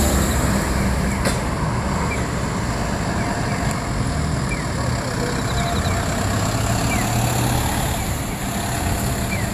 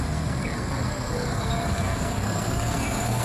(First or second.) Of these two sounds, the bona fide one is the first